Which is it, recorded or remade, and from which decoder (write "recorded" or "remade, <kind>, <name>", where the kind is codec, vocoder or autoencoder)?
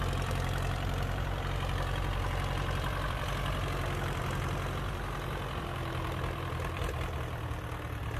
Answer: remade, vocoder, BigVGAN v2